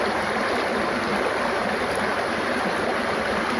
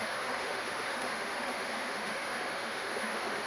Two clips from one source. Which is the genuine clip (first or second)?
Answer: first